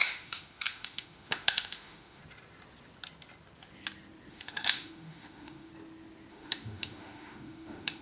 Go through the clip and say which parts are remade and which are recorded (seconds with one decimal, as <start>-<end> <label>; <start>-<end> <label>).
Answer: 0.0-2.2 remade; 2.2-4.3 recorded; 4.3-5.7 remade; 5.7-6.3 recorded; 6.3-8.0 remade